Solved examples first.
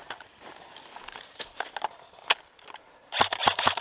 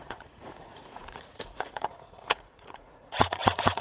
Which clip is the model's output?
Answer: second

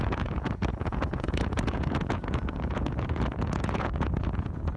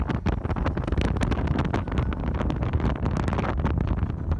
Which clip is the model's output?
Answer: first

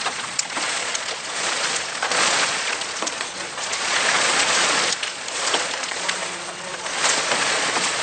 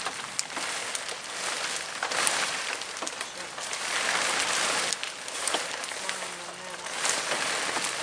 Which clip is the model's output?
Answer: first